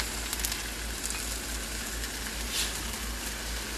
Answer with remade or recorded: recorded